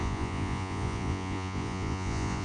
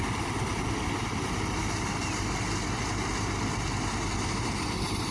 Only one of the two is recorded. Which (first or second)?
second